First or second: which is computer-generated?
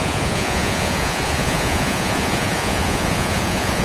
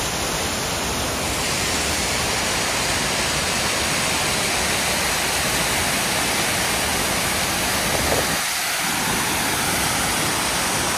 first